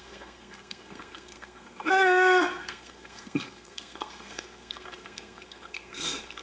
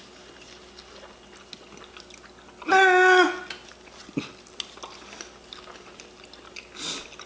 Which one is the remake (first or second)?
first